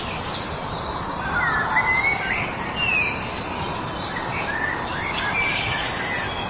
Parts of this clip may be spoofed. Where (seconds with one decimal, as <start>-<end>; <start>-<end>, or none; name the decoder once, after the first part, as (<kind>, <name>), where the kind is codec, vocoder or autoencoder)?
none